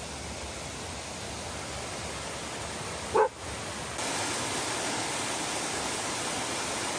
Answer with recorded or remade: recorded